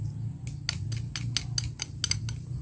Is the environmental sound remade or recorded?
recorded